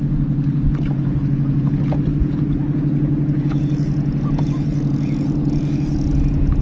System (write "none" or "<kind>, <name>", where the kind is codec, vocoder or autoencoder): vocoder, Vocos